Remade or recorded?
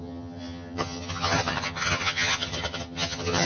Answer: remade